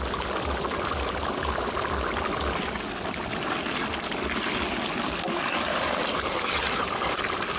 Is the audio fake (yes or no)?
no